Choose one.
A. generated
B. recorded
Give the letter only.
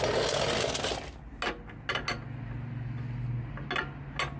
B